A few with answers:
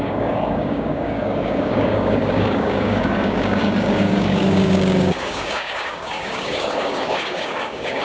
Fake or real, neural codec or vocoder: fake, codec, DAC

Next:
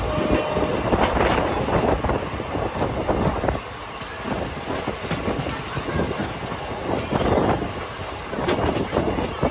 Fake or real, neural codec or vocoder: real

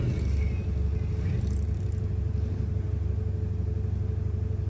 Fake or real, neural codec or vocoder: real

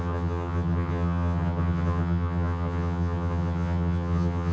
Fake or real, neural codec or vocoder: fake, vocoder, HiFi-GAN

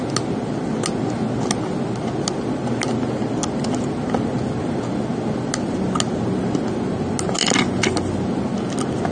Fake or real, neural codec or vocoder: real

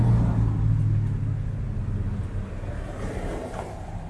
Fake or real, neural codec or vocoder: real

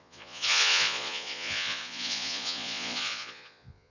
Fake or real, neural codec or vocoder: fake, vocoder, Vocos